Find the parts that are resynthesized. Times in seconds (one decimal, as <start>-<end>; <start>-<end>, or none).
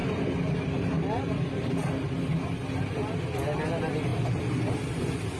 4.1-5.4